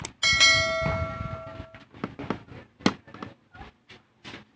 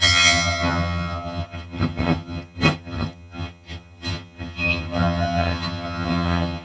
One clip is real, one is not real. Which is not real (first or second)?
second